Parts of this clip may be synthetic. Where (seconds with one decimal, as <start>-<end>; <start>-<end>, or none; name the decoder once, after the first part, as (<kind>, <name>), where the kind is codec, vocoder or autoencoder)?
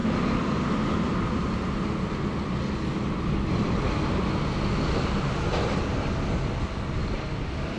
none